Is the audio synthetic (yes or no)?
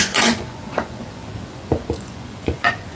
yes